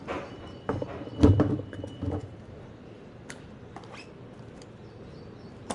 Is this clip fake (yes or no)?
no